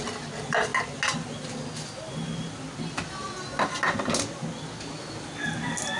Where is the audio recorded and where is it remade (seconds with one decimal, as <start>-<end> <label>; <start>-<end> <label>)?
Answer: 0.0-6.0 recorded